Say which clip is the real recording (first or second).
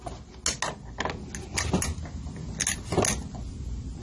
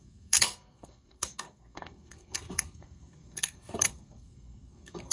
first